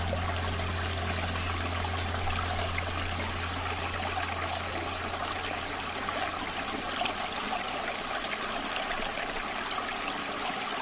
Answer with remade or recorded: recorded